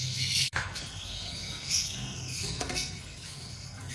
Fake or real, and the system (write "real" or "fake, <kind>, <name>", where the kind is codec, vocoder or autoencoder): fake, codec, SNAC